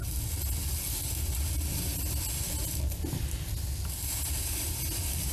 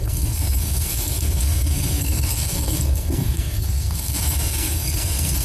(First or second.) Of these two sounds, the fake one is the second